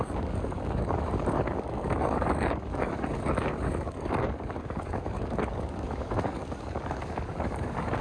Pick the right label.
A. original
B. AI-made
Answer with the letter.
B